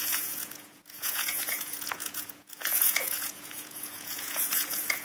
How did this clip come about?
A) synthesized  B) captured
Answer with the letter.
A